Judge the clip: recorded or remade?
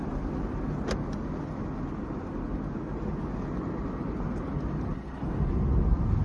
recorded